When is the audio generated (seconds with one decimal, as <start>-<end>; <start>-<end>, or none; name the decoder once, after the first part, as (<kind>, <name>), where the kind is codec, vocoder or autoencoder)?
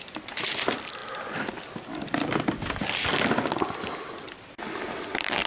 none